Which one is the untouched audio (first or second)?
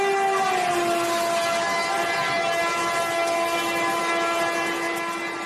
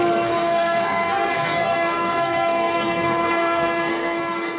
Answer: first